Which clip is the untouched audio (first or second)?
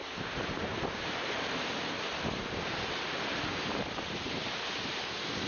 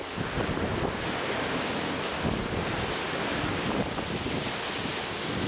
second